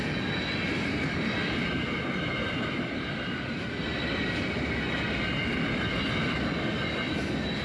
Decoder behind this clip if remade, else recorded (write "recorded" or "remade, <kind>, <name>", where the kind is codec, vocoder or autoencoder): recorded